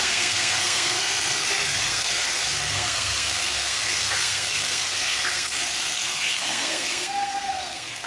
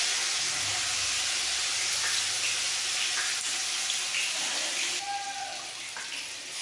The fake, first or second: first